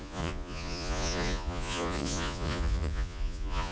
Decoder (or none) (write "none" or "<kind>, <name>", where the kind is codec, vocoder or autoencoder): vocoder, Vocos